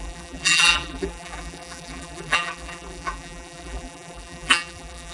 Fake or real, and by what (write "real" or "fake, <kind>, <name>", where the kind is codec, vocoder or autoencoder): fake, vocoder, BigVGAN v2